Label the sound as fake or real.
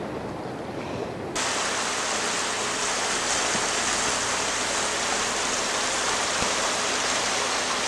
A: real